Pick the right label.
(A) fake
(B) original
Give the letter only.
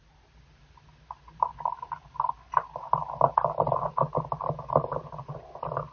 B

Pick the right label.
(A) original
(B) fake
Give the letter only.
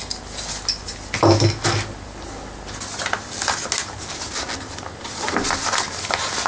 A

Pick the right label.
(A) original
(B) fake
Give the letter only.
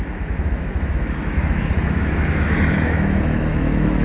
B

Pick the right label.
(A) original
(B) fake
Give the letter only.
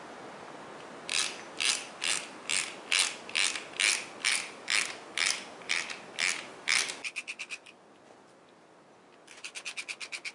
A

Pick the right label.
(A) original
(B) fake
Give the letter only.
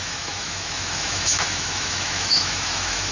B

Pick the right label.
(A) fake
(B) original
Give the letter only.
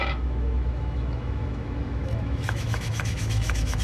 A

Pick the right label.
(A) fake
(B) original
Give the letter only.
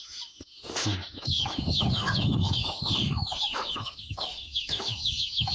A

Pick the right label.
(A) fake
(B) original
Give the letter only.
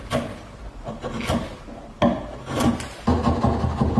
B